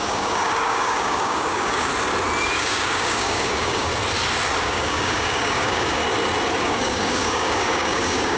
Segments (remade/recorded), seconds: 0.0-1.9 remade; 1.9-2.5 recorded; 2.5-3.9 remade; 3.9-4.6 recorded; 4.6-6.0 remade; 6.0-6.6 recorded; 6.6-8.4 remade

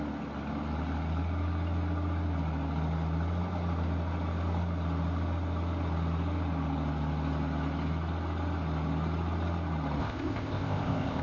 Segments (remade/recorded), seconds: 0.0-10.0 recorded; 10.0-11.2 remade

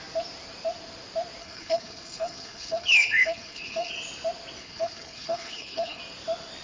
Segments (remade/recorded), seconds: 0.0-1.4 recorded; 1.4-3.9 remade; 3.9-4.6 recorded; 4.6-6.0 remade; 6.0-6.6 recorded

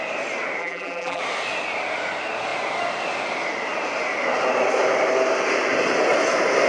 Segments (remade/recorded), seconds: 0.0-0.6 recorded; 0.6-1.2 remade; 1.2-6.7 recorded